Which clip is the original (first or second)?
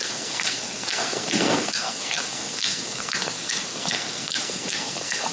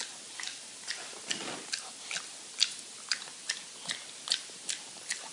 second